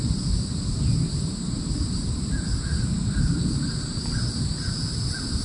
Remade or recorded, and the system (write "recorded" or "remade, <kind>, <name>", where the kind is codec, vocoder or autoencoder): recorded